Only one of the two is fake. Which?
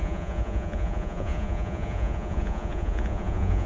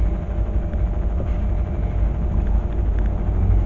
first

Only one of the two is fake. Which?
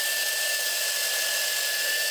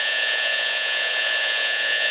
second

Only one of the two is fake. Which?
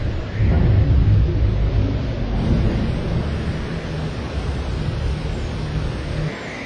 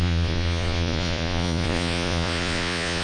second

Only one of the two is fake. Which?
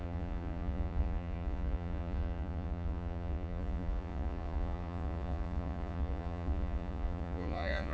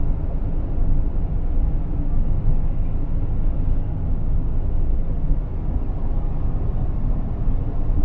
first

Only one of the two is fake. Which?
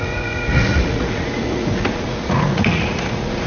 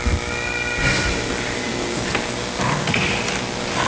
first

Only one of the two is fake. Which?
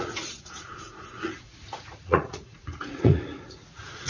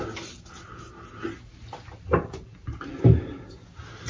first